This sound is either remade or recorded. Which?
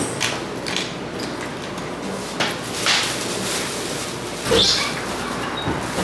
recorded